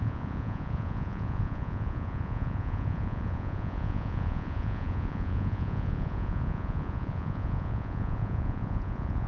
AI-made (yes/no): yes